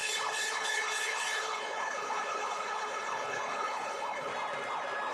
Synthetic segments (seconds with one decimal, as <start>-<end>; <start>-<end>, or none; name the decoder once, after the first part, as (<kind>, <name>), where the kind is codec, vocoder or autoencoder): 0.0-4.3 (codec, HILCodec)